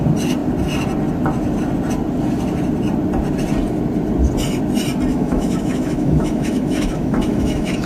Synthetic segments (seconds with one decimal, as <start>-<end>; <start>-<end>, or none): 5.1-7.9

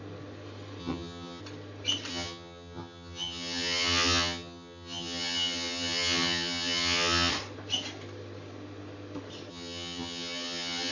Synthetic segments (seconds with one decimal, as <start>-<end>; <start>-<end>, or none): 0.8-1.4; 2.1-7.3; 9.5-10.9